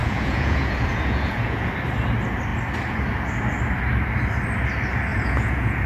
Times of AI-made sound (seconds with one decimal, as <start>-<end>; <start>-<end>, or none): 0.0-1.7; 5.1-5.9